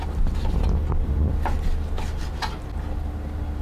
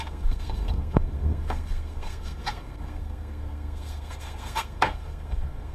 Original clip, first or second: first